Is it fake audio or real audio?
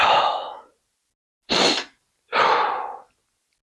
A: real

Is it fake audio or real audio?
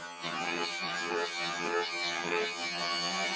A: fake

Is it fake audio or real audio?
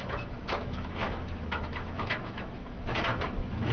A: fake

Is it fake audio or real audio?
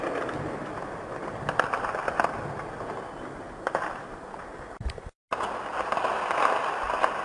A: real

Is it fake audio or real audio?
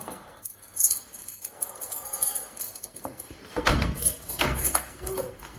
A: fake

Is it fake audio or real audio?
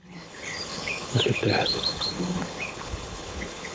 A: fake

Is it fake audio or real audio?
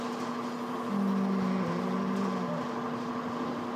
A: real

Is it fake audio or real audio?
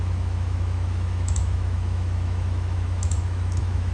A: fake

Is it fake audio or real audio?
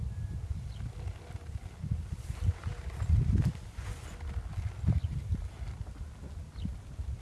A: real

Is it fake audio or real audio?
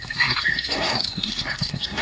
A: fake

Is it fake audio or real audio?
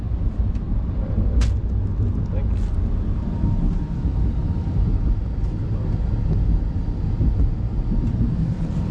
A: real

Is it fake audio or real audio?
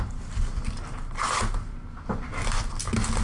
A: real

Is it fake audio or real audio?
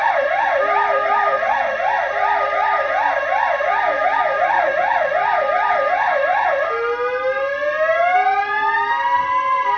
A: real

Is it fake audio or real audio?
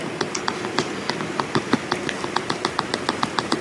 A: real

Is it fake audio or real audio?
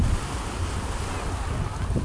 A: real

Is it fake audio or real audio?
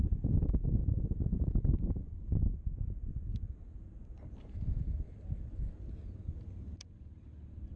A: real